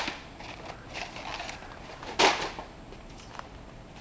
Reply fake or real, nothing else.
real